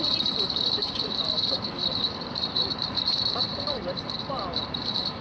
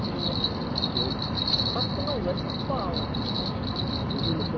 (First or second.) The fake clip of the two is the first